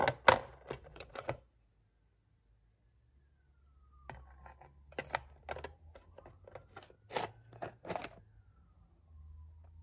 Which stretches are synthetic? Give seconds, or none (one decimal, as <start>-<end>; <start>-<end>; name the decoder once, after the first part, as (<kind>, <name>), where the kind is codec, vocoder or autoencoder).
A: 0.9-1.4 (vocoder, WaveNeXt)